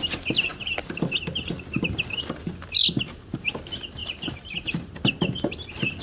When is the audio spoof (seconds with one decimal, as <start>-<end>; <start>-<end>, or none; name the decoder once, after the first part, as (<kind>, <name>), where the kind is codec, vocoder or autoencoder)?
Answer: 4.0-4.7 (vocoder, BigVGAN v2)